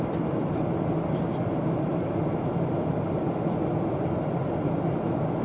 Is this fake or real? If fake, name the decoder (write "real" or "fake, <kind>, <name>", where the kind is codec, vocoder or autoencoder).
real